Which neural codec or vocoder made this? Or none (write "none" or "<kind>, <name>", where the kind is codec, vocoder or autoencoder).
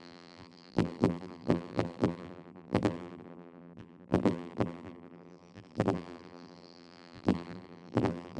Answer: vocoder, BigVGAN v2